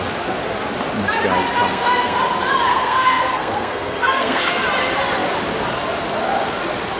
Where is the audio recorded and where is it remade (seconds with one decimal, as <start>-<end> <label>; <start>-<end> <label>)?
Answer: 0.0-1.7 recorded; 1.7-2.2 remade; 2.2-2.7 recorded; 2.7-4.6 remade; 4.6-7.0 recorded